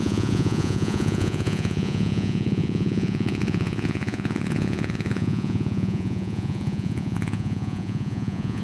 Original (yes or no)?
no